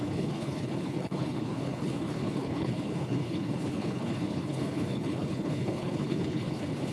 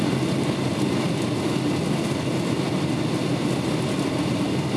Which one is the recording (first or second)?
second